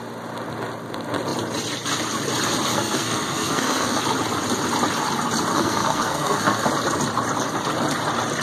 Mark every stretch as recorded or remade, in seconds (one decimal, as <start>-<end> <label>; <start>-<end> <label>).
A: 0.0-2.7 recorded; 2.7-4.0 remade; 4.0-5.5 recorded; 5.5-6.7 remade; 6.7-8.4 recorded